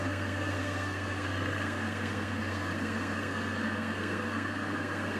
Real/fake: fake